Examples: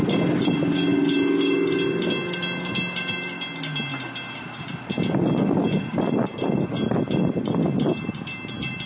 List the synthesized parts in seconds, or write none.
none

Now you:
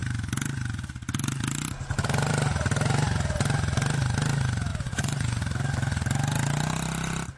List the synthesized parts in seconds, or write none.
4.7-5.4 (vocoder, Vocos)

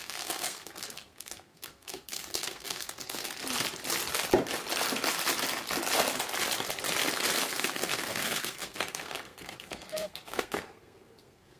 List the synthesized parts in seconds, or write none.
0.0-3.4 (codec, SNAC); 7.5-11.6